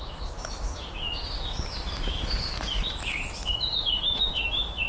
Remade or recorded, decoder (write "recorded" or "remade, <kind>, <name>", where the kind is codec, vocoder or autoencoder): remade, autoencoder, DAC-VAE